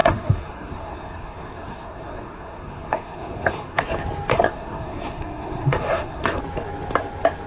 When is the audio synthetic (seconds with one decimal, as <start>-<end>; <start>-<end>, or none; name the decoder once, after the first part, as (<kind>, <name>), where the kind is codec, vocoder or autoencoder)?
0.0-3.8 (codec, SNAC); 4.3-6.4